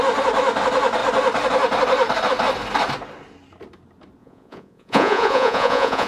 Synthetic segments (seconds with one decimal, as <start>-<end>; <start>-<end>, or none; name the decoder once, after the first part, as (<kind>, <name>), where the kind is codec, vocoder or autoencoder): 4.2-6.1 (vocoder, Vocos)